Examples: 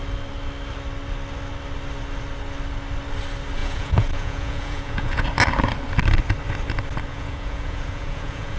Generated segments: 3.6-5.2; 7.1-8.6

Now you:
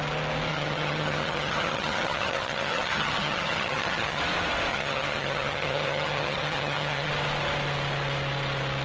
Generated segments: 0.5-4.2; 4.7-7.1

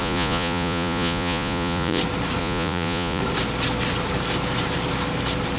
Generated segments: 0.0-2.0; 2.4-3.2

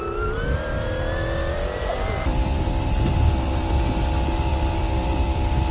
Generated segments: 1.4-4.0; 4.5-5.7

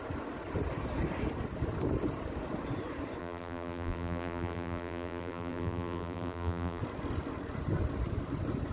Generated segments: 3.2-6.8

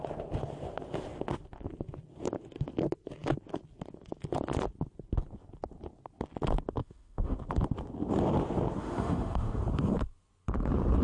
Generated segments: 6.8-7.4; 8.8-9.6

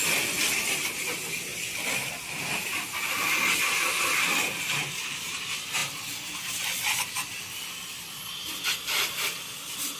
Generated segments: none

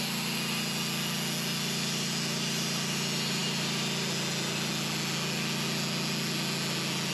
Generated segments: none